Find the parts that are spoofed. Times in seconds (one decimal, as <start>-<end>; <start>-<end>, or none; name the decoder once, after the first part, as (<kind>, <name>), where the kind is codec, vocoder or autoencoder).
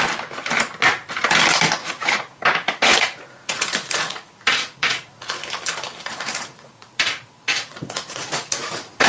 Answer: 1.8-5.4 (vocoder, Vocos); 6.1-9.1